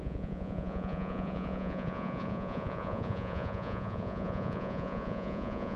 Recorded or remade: remade